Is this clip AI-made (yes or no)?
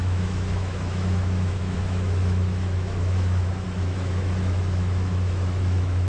yes